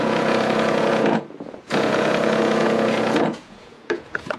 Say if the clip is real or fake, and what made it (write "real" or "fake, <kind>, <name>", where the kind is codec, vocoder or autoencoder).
fake, vocoder, Vocos